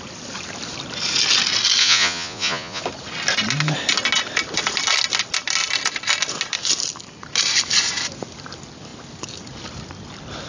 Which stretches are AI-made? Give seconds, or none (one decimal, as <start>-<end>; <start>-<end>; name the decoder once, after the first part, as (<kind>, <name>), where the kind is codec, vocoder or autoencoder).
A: 1.8-2.8 (vocoder, Vocos)